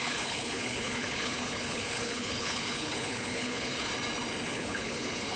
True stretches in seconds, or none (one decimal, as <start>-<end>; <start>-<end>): 3.9-4.5